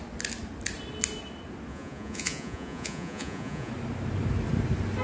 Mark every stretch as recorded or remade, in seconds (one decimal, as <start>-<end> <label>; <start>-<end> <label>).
0.0-1.7 recorded; 1.7-3.7 remade; 3.7-5.0 recorded